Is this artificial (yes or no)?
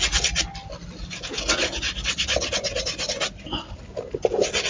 no